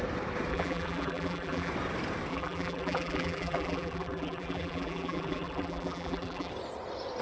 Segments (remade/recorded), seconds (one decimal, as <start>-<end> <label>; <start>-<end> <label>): 0.0-0.5 recorded; 0.5-1.7 remade; 1.7-2.3 recorded; 2.3-6.5 remade; 6.5-7.2 recorded